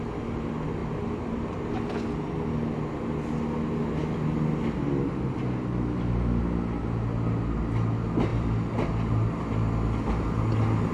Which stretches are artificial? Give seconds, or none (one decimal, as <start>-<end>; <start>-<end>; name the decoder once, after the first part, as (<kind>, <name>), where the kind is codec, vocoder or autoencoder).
0.8-1.6 (vocoder, BigVGAN v2); 8.3-9.4